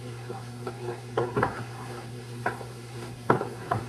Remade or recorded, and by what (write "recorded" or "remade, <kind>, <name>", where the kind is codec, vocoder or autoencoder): remade, codec, SNAC